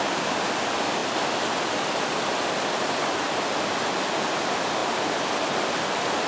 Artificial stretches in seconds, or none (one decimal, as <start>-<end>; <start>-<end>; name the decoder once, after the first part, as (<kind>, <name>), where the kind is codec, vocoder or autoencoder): none